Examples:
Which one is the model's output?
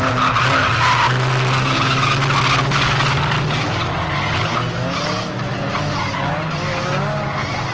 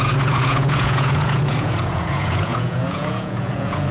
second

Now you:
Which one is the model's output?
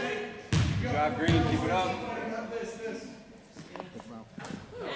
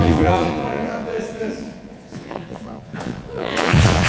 second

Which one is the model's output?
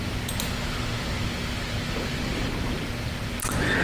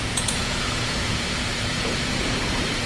second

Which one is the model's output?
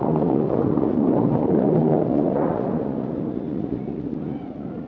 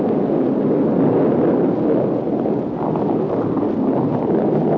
first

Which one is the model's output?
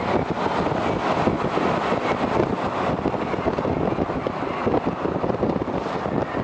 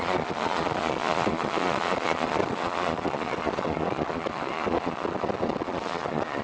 second